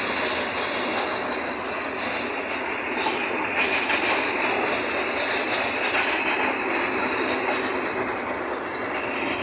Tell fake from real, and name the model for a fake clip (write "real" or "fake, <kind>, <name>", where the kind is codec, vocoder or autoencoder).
real